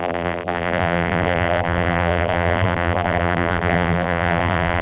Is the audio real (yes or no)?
no